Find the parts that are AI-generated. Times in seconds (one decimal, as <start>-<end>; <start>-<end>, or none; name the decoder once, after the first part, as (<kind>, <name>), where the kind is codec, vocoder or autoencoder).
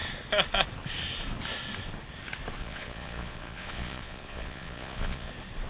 2.6-5.3 (vocoder, Vocos)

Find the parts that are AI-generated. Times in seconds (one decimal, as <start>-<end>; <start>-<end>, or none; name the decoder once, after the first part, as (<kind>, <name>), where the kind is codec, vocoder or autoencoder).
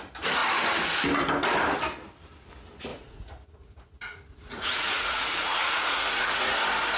2.9-6.5 (vocoder, Vocos)